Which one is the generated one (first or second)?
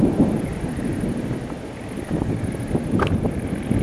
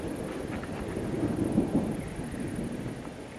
first